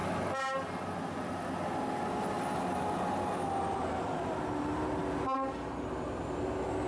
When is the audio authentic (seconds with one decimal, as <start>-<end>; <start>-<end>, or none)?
0.0-6.9